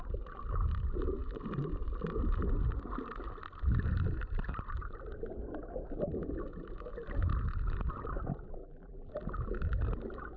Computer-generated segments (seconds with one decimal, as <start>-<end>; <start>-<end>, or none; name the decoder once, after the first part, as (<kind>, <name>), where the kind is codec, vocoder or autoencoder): 8.6-9.1 (vocoder, BigVGAN v2)